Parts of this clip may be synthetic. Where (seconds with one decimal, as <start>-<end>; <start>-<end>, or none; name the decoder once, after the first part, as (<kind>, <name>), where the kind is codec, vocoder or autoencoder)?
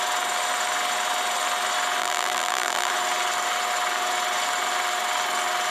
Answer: 2.0-2.9 (vocoder, BigVGAN v2)